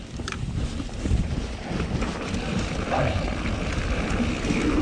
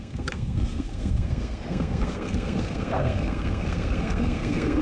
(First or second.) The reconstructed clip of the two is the second